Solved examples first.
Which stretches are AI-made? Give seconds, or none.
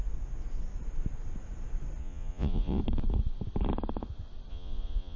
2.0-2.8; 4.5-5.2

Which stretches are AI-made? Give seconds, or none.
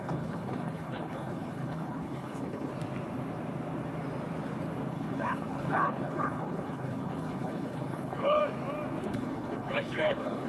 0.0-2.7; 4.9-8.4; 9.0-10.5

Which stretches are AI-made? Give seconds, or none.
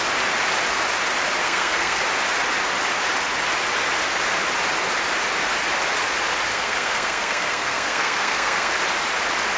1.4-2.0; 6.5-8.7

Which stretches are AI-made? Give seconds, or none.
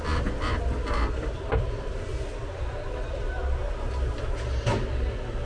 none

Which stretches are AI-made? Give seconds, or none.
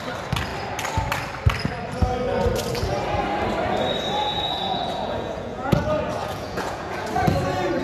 4.2-5.8; 6.2-7.1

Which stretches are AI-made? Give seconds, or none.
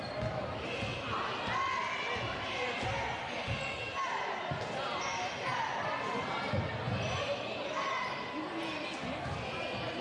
none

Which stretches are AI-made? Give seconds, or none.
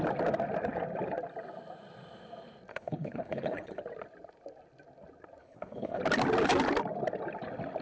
2.7-3.8; 5.4-6.0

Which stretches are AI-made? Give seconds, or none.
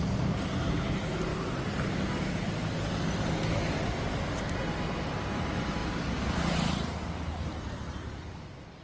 none